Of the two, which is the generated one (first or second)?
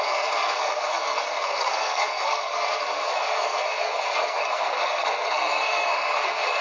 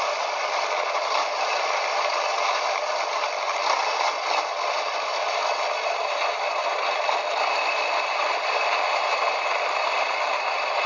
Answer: first